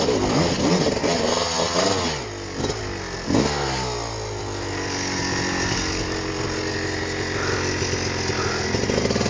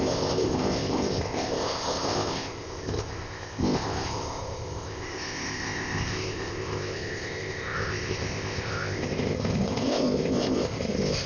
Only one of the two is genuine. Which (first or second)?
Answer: first